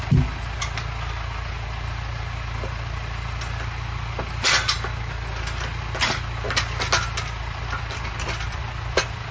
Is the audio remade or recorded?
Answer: recorded